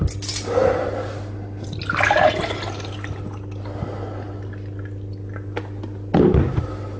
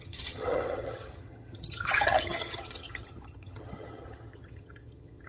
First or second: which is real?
first